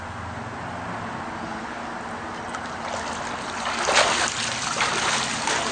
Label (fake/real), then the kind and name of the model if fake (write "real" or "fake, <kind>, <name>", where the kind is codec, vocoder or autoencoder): real